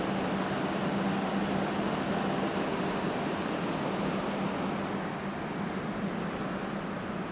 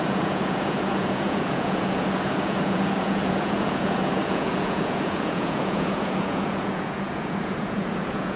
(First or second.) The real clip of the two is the first